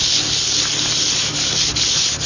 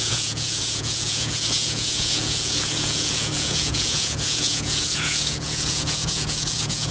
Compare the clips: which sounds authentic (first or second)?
first